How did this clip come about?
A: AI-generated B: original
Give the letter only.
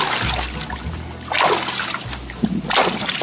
B